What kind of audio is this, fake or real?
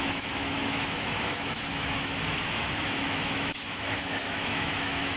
fake